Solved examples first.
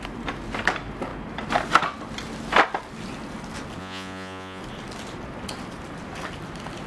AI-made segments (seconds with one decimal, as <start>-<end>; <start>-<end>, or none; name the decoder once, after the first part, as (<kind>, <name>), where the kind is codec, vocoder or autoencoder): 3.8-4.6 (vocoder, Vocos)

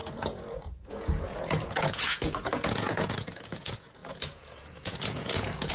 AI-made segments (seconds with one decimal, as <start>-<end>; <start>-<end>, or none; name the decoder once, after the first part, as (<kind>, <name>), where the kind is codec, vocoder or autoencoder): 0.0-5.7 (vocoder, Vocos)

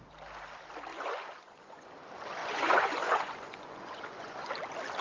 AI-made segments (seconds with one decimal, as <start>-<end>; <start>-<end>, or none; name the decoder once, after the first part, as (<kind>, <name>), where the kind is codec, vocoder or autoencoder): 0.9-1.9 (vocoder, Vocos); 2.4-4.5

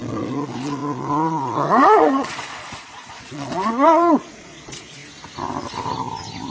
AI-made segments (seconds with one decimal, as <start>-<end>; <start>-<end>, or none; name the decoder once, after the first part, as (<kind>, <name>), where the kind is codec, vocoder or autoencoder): 0.0-5.0 (vocoder, Vocos)

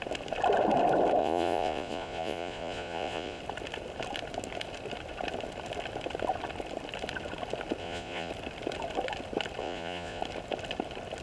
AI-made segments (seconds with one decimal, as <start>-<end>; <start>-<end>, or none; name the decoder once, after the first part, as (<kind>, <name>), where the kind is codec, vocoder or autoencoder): 1.2-3.4 (vocoder, Vocos); 7.8-8.3; 9.6-10.2

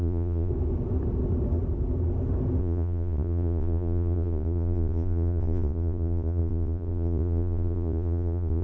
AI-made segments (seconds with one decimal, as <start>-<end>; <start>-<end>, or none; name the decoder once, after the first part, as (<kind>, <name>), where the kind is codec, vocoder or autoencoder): 0.0-0.5 (vocoder, Vocos); 2.6-8.6